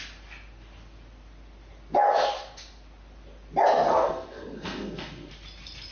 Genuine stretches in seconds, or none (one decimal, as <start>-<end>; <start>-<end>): 0.0-3.9; 5.3-5.9